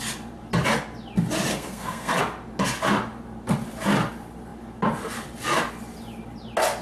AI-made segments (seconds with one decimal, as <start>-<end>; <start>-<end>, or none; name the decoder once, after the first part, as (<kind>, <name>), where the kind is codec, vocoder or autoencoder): 1.5-2.2 (codec, SNAC)